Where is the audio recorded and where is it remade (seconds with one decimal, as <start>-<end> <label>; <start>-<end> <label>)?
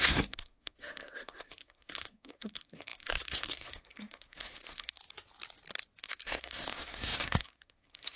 0.0-5.0 remade; 5.0-6.0 recorded; 6.0-8.2 remade